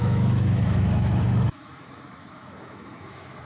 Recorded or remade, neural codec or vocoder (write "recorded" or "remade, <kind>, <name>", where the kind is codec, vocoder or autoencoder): remade, autoencoder, DAC-VAE